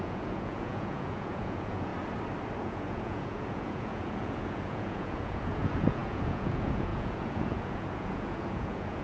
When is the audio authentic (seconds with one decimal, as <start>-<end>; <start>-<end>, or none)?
1.9-2.6